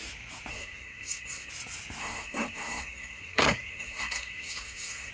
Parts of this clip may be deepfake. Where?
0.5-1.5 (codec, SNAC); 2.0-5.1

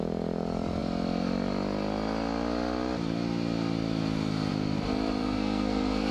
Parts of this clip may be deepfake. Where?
5.2-6.1 (codec, SNAC)

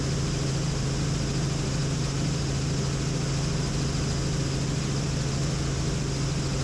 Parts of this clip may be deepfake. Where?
none

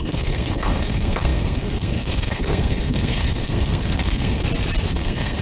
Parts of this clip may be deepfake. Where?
0.0-4.4 (codec, SNAC); 4.9-5.4

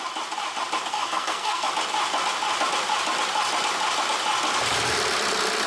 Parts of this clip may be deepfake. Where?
0.9-1.7 (codec, SNAC)

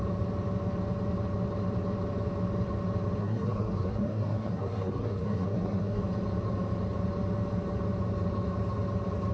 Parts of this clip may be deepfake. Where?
3.2-6.0 (codec, SNAC)

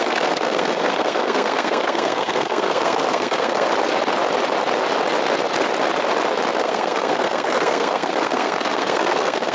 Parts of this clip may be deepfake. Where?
0.0-3.7 (codec, SNAC); 6.6-9.5

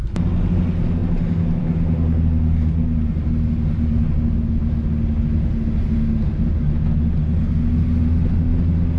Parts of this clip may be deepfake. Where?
none